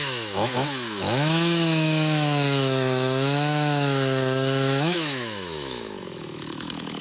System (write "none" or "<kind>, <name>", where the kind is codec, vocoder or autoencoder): autoencoder, DAC-VAE